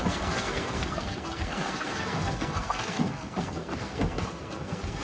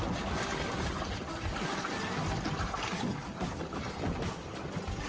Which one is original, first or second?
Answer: second